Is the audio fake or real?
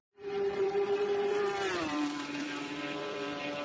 fake